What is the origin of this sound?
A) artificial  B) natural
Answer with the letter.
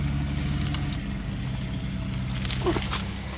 B